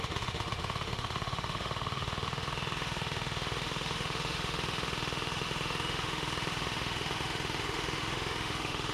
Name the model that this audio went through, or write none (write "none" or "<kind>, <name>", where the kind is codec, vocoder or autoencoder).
autoencoder, DAC-VAE